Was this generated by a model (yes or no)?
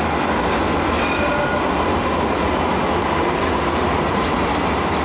no